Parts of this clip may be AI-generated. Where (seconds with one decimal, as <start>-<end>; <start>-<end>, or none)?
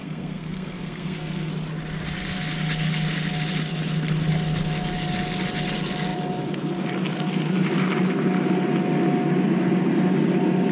0.0-1.5